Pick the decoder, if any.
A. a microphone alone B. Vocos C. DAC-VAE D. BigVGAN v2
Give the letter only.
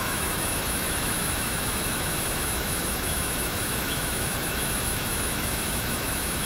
C